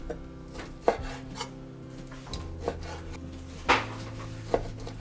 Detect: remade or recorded recorded